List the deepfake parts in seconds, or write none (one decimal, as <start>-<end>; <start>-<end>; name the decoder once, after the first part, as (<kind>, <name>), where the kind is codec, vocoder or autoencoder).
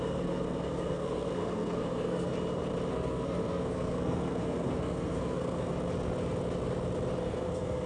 0.0-2.3 (codec, SNAC); 2.9-5.7; 7.2-7.9